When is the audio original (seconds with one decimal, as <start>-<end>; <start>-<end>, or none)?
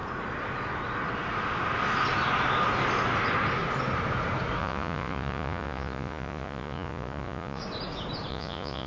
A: 0.0-4.6; 7.6-8.3